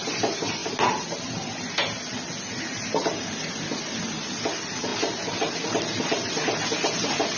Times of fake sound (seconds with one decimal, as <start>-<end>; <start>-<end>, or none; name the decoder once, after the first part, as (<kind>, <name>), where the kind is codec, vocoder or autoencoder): 4.9-5.5 (vocoder, BigVGAN v2)